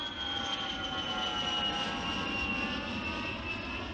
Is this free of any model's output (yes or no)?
yes